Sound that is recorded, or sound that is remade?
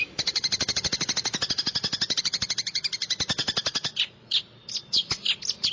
recorded